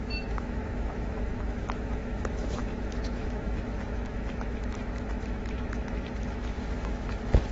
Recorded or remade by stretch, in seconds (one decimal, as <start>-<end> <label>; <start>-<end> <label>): 0.0-7.5 remade